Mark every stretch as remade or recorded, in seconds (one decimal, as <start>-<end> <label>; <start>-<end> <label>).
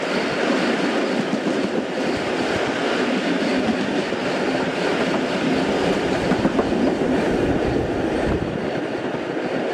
0.0-9.7 recorded